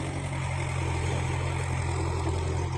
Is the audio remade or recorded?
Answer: recorded